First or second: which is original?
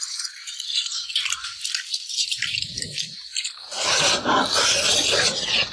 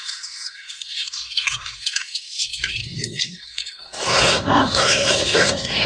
first